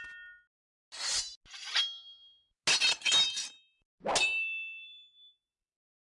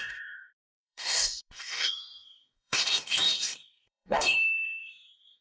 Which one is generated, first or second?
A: second